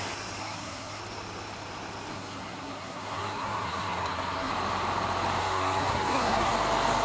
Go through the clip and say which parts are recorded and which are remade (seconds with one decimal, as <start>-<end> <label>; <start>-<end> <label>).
0.0-0.4 recorded; 0.4-1.0 remade; 1.0-2.1 recorded; 2.1-4.5 remade; 4.5-5.4 recorded; 5.4-6.5 remade; 6.5-7.0 recorded